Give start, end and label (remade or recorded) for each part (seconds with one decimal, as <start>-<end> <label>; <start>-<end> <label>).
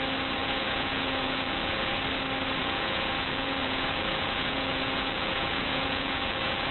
0.0-0.4 recorded; 0.4-2.0 remade; 2.0-2.6 recorded; 2.6-6.7 remade